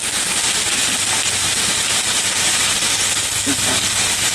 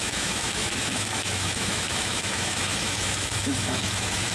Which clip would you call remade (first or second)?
second